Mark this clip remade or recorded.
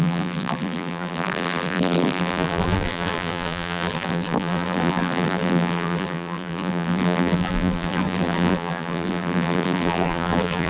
remade